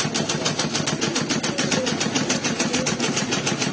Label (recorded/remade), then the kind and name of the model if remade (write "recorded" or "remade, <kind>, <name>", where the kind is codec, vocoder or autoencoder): recorded